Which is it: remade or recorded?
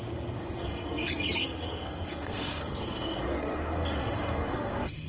remade